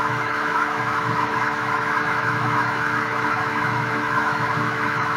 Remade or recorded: remade